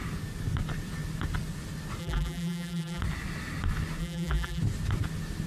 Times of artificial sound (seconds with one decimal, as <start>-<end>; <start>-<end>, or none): 2.0-3.0; 4.0-4.6

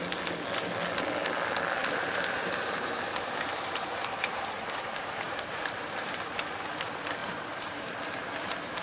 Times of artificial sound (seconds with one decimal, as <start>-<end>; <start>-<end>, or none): 1.8-6.2; 7.2-8.8